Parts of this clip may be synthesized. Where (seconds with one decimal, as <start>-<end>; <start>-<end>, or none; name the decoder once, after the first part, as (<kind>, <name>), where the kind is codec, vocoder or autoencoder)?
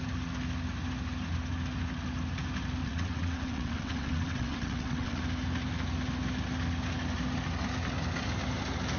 2.8-5.2 (vocoder, WaveNeXt)